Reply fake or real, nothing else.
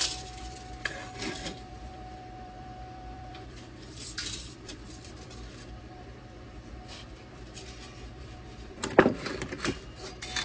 fake